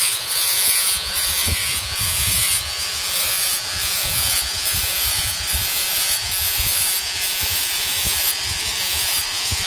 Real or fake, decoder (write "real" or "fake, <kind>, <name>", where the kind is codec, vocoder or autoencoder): fake, vocoder, Vocos